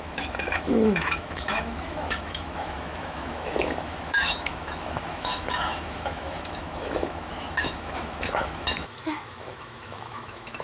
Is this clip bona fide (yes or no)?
no